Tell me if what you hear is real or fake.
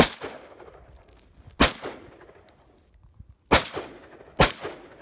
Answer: real